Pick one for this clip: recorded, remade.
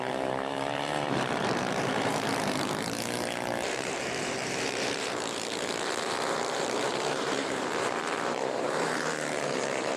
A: remade